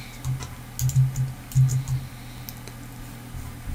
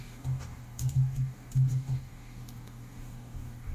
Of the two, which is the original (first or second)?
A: first